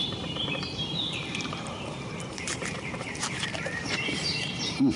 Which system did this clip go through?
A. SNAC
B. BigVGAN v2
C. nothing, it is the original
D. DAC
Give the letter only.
B